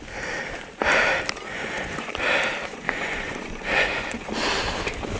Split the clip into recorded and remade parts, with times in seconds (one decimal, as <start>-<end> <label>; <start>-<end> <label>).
0.0-1.5 recorded; 1.5-2.1 remade; 2.1-2.7 recorded; 2.7-4.3 remade; 4.3-5.2 recorded